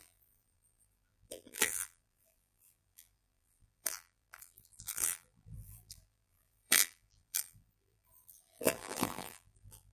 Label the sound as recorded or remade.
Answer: remade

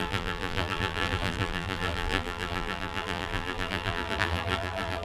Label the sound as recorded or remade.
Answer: remade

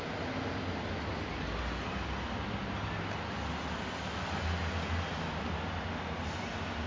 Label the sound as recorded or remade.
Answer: recorded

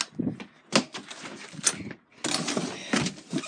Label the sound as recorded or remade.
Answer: recorded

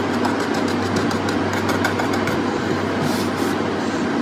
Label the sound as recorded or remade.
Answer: recorded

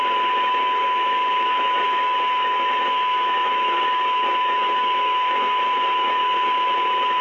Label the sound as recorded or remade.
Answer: remade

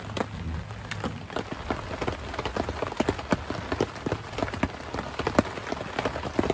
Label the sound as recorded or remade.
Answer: recorded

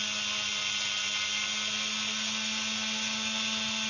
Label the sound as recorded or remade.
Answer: recorded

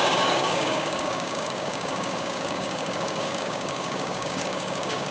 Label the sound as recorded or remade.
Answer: remade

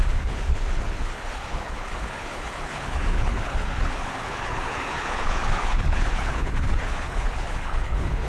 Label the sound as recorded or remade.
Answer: remade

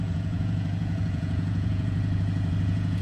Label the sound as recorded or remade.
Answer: remade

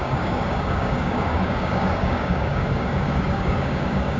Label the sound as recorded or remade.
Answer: remade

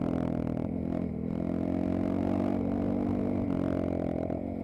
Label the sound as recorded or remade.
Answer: recorded